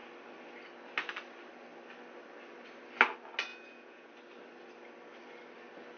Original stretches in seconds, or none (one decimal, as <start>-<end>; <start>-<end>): 0.0-3.5; 4.1-6.0